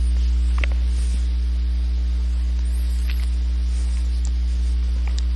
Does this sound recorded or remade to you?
recorded